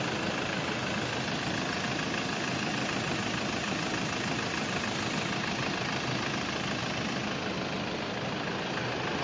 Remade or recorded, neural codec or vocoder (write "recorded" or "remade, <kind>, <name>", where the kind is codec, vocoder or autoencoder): recorded